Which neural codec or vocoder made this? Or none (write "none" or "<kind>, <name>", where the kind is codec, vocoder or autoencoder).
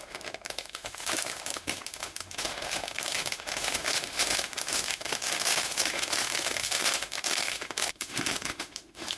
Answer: autoencoder, DAC-VAE